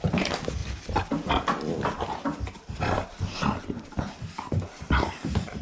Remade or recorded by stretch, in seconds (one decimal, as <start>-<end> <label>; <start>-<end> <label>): 0.0-5.6 recorded